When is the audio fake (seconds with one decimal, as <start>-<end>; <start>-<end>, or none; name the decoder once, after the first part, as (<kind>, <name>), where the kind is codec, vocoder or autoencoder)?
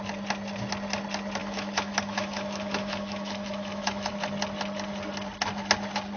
1.4-4.1 (autoencoder, DAC-VAE)